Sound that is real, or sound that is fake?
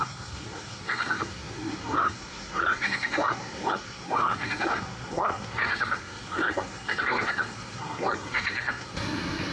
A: fake